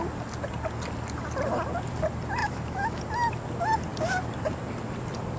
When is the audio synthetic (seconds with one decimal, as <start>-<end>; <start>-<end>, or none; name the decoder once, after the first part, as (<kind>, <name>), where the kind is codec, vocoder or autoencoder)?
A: 2.4-3.0 (autoencoder, DAC-VAE)